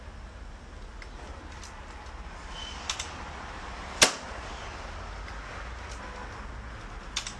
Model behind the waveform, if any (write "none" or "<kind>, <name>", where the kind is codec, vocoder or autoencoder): none